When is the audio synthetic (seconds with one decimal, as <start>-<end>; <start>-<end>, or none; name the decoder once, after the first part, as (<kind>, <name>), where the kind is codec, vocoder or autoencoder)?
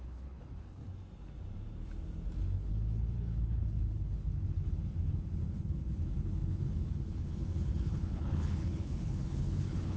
0.0-0.8 (codec, HILCodec); 2.4-10.0